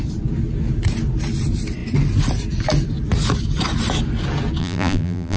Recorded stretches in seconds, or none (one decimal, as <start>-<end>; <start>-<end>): 0.0-4.6